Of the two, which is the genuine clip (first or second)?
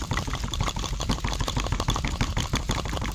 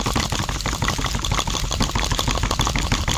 second